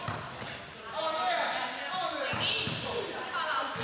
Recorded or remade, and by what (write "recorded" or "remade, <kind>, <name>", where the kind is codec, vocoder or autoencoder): recorded